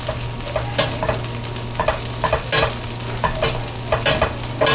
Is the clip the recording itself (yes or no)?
yes